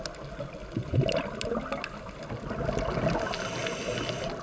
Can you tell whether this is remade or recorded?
recorded